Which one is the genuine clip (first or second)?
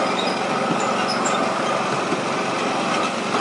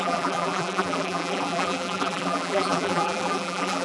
first